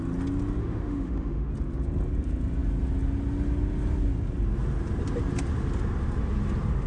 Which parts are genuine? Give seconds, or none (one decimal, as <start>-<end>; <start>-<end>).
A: 0.0-0.6; 1.5-6.9